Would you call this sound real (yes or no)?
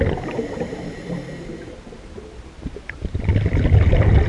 yes